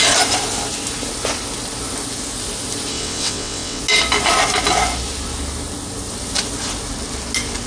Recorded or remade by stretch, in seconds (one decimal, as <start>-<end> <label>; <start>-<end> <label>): 0.0-2.9 recorded; 2.9-3.8 remade; 3.8-7.7 recorded